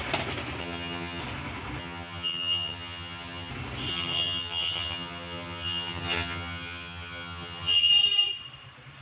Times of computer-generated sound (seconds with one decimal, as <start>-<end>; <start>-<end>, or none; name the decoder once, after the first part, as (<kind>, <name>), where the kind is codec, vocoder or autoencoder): 0.6-1.2 (vocoder, HiFi-GAN); 1.8-3.5; 3.9-7.9